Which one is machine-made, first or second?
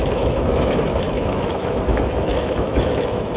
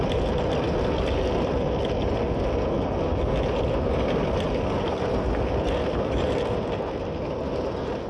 first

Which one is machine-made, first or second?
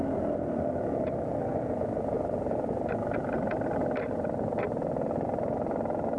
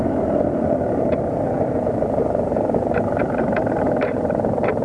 second